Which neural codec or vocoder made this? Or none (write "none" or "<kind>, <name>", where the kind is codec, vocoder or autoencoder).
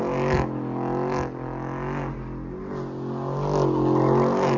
none